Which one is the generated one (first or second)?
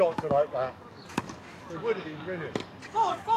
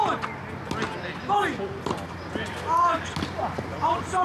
first